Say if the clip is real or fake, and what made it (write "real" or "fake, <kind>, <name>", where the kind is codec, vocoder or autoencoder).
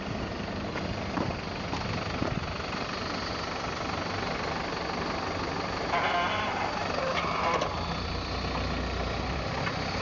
fake, vocoder, BigVGAN v2